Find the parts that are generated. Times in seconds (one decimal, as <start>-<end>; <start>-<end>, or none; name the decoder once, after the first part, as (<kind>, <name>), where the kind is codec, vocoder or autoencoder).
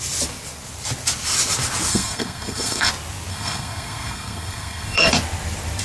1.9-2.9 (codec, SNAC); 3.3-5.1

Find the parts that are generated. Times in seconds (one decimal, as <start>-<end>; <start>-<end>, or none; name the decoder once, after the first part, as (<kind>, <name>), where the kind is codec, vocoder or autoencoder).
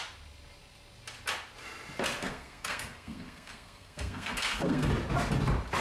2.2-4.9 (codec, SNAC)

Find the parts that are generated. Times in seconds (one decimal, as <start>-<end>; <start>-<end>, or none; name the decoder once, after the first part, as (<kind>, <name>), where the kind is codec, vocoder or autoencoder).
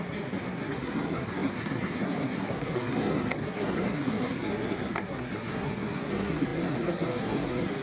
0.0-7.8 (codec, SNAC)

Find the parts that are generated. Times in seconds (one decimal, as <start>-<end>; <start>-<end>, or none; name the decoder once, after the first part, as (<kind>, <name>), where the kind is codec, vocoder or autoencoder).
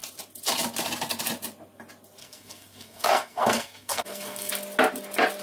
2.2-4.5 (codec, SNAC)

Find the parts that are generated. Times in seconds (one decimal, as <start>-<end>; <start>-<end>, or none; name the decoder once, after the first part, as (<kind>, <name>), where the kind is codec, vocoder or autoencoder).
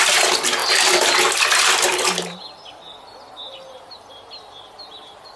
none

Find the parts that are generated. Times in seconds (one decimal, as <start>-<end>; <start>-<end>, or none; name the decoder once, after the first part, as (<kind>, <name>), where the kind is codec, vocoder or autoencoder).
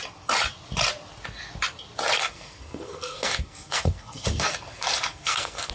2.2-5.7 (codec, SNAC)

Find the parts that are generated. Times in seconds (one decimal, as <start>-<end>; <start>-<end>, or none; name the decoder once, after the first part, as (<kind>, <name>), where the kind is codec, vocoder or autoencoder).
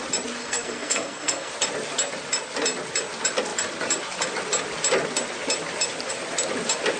0.4-1.5 (codec, SNAC)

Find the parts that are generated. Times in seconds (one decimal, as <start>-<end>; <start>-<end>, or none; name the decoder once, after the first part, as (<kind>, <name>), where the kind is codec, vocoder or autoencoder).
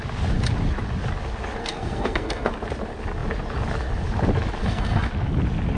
1.6-2.5 (codec, SNAC); 4.6-5.1